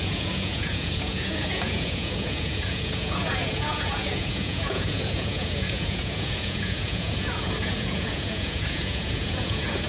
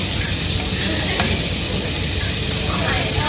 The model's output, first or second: first